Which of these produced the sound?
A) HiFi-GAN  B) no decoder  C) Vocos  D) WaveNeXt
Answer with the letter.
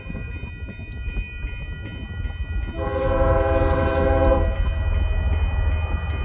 B